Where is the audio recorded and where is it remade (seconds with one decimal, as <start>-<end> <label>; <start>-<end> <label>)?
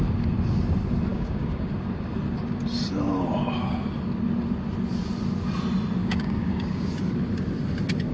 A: 0.0-1.1 recorded; 1.1-1.7 remade; 1.7-6.0 recorded; 6.0-6.9 remade; 6.9-8.1 recorded